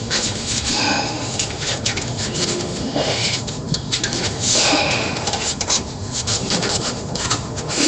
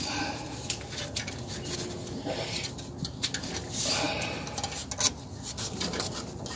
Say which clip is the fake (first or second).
first